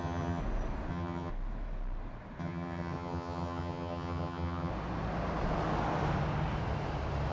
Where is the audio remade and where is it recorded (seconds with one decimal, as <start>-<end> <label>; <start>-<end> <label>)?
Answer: 0.0-0.4 remade; 0.4-0.9 recorded; 0.9-1.3 remade; 1.3-2.4 recorded; 2.4-4.7 remade; 4.7-7.3 recorded